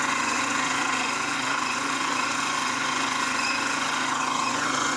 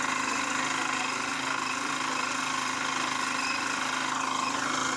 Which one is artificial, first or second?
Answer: first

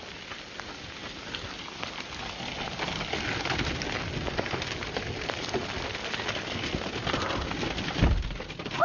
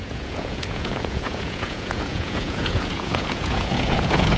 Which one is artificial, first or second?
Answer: second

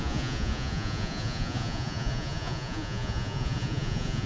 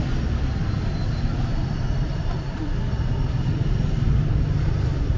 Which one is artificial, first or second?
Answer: first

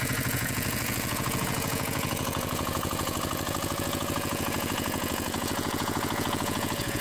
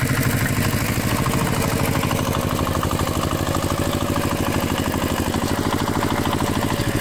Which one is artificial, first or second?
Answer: first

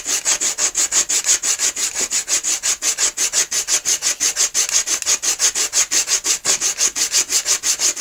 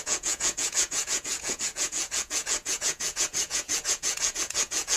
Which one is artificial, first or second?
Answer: second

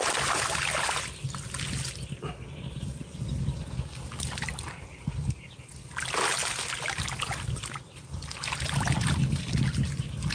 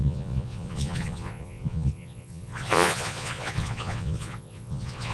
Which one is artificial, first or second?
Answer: second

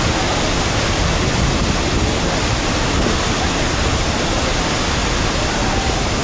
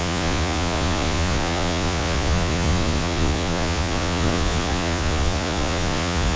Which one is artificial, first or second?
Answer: second